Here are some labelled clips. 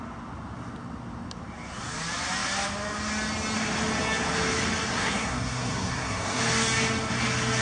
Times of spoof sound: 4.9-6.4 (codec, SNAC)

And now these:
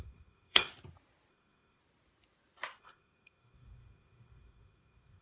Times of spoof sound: 0.0-0.7 (codec, SNAC); 1.3-1.8; 2.8-5.2

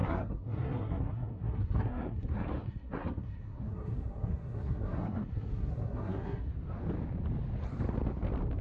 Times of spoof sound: 0.0-6.5 (codec, SNAC)